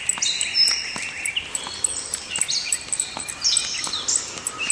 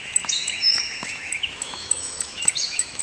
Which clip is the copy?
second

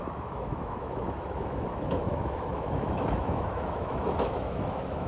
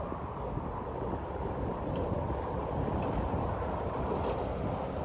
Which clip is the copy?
first